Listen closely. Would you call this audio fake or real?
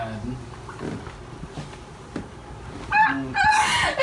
real